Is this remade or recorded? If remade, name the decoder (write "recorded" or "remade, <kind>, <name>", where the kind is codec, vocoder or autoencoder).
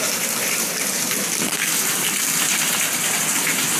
recorded